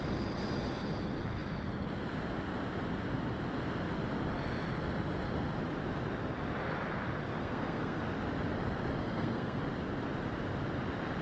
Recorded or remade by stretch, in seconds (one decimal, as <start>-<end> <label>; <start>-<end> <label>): 0.0-7.4 recorded; 7.4-8.0 remade; 8.0-9.0 recorded; 9.0-9.6 remade; 9.6-11.2 recorded